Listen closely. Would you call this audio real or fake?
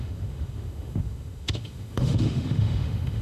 fake